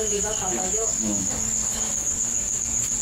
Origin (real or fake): fake